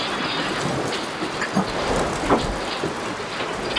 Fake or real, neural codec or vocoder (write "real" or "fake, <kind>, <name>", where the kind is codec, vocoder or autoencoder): real